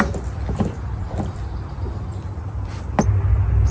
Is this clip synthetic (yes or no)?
no